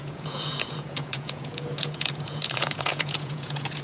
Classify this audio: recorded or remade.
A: remade